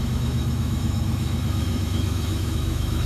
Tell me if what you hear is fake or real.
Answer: fake